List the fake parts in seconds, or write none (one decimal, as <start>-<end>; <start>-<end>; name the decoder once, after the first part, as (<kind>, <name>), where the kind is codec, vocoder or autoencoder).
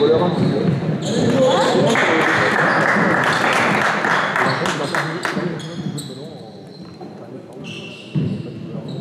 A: none